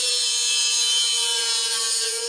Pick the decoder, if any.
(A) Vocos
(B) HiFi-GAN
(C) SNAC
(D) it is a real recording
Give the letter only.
A